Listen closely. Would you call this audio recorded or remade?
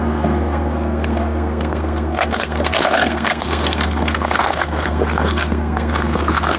remade